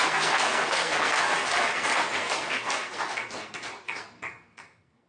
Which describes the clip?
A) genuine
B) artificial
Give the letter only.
B